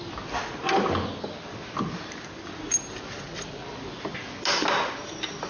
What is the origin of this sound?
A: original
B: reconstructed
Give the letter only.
A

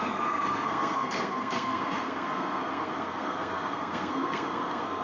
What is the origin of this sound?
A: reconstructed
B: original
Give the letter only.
A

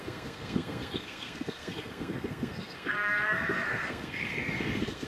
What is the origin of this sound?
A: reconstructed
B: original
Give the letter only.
A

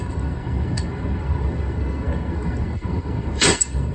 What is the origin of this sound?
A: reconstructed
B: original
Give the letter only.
A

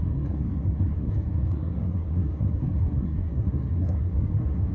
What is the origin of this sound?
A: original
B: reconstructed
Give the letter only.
B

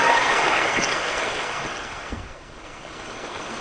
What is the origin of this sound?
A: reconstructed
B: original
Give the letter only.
A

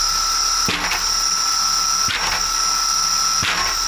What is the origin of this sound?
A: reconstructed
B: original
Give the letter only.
B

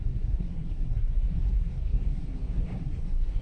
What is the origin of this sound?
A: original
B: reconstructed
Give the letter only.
B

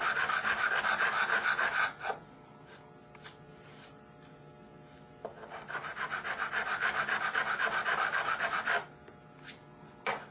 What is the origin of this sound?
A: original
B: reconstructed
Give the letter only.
A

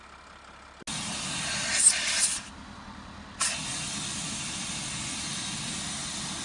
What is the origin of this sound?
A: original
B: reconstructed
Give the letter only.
A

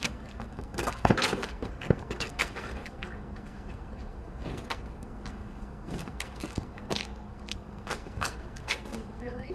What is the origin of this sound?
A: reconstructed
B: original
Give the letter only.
A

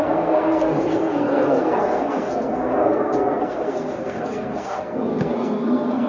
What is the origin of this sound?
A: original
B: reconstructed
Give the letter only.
B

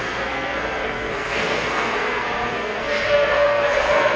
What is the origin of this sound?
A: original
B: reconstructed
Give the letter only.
B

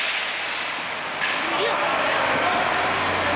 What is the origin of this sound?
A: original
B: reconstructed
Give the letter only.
A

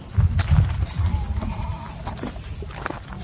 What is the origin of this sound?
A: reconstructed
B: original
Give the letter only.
B